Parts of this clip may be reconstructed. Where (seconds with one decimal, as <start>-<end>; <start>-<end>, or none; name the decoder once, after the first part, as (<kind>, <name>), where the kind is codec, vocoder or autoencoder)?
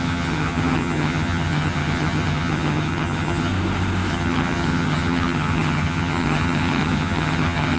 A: 0.0-3.5 (vocoder, HiFi-GAN); 4.1-7.8